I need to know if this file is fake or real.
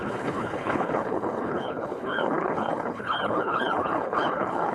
fake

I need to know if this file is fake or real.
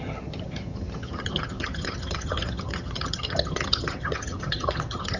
fake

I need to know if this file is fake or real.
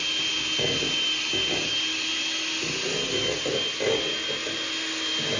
real